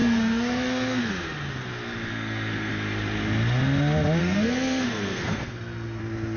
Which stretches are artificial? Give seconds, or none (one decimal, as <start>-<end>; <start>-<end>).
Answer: 0.0-1.1; 2.1-2.7; 4.2-6.0

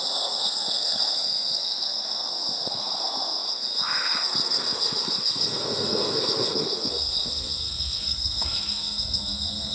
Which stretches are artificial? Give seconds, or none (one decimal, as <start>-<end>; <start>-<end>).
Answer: 0.0-9.7

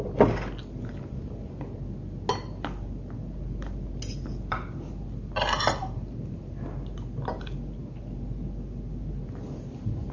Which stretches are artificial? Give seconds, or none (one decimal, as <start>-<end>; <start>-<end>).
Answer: none

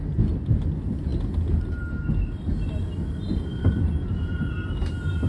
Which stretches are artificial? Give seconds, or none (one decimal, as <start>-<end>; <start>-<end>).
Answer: none